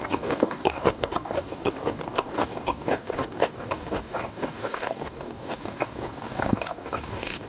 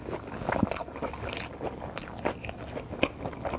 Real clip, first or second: second